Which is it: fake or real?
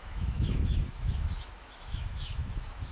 fake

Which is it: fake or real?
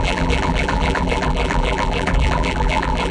fake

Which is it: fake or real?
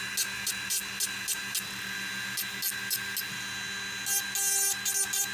real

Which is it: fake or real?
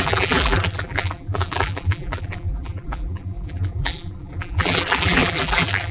fake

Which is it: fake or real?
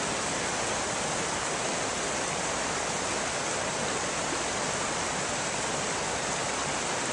real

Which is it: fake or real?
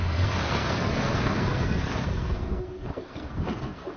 fake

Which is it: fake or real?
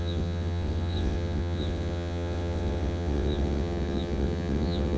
fake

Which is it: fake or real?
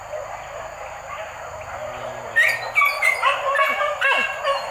real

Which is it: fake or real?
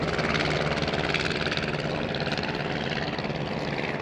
real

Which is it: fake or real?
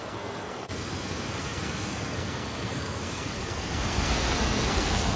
fake